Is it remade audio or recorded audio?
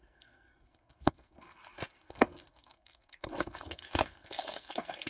remade